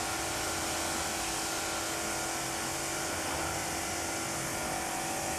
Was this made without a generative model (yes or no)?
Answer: yes